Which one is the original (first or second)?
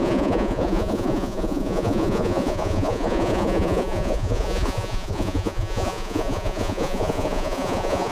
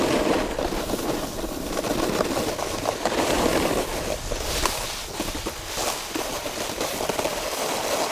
second